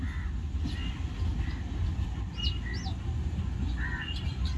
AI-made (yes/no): no